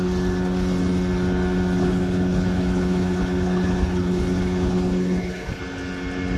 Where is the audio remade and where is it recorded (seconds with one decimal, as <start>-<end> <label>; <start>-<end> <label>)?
0.0-1.8 recorded; 1.8-5.6 remade; 5.6-6.4 recorded